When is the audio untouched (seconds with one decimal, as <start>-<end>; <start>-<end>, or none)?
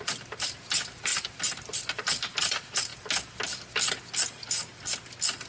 1.1-1.7; 2.9-5.5